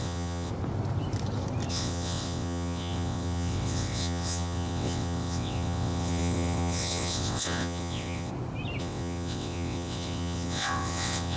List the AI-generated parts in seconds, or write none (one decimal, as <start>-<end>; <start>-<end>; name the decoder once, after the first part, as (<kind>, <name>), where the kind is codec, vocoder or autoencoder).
0.0-0.5 (vocoder, WaveNeXt); 1.7-8.3; 8.8-11.4